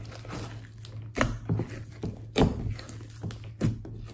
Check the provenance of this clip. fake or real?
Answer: real